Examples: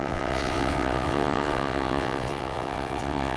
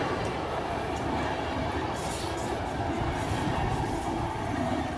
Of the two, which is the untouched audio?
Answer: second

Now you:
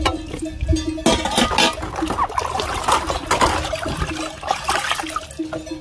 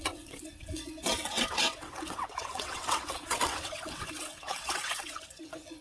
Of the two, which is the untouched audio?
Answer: first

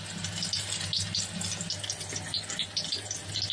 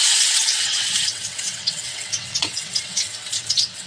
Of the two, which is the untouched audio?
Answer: first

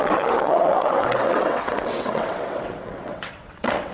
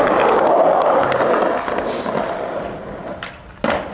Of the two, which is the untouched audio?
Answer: second